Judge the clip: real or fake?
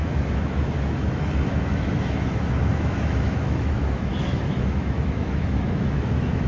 fake